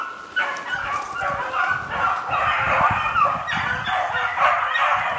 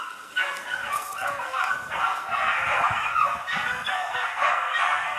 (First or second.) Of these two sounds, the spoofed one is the second